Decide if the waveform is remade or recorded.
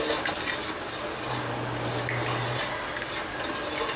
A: recorded